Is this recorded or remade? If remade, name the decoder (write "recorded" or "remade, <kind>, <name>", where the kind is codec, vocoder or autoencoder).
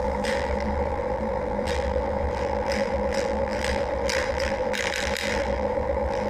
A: remade, vocoder, BigVGAN v2